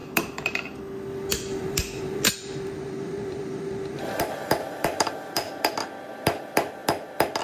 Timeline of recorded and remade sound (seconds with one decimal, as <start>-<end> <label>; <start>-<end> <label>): 0.0-0.8 remade; 0.8-1.3 recorded; 1.3-5.7 remade; 5.7-7.4 recorded